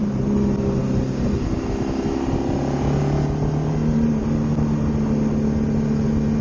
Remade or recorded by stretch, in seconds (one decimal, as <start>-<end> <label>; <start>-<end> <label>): 0.0-6.4 recorded

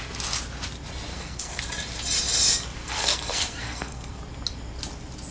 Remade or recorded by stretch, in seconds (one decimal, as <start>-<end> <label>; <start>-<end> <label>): 0.0-1.1 recorded; 1.1-1.6 remade; 1.6-2.8 recorded; 2.8-4.2 remade; 4.2-5.3 recorded

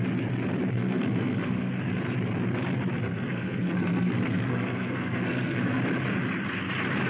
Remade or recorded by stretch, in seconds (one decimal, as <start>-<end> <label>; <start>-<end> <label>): 0.0-0.8 recorded; 0.8-1.7 remade; 1.7-3.0 recorded; 3.0-5.8 remade; 5.8-7.1 recorded

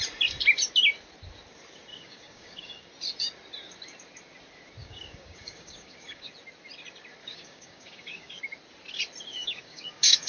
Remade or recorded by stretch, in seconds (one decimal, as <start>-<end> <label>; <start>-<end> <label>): 0.0-1.9 recorded; 1.9-2.9 remade; 2.9-4.8 recorded; 4.8-6.3 remade; 6.3-7.2 recorded; 7.2-8.4 remade; 8.4-9.3 recorded; 9.3-10.3 remade

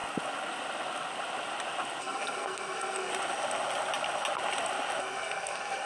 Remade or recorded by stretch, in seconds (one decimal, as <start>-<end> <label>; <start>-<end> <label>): 0.0-2.0 recorded; 2.0-3.1 remade; 3.1-5.0 recorded; 5.0-5.9 remade

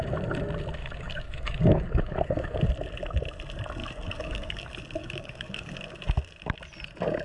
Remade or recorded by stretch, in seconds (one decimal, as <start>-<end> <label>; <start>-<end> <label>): 0.0-0.8 recorded; 0.8-2.6 remade; 2.6-3.8 recorded; 3.8-4.6 remade; 4.6-5.0 recorded; 5.0-5.7 remade; 5.7-7.2 recorded